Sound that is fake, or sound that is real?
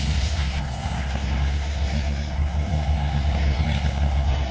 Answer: fake